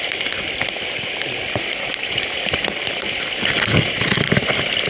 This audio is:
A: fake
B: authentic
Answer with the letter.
B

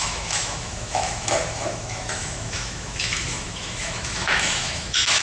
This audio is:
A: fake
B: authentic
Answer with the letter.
A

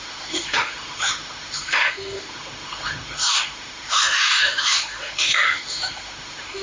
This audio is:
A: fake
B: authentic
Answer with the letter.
A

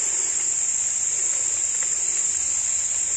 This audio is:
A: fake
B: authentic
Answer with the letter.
B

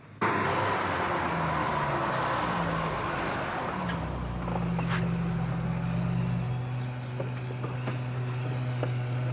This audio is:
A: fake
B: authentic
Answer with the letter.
B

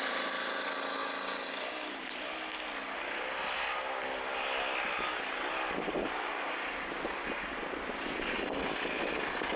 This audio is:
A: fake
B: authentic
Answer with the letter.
B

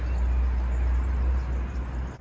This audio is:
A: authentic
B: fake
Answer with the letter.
A